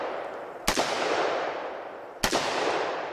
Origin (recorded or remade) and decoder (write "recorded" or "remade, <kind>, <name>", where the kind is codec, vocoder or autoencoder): recorded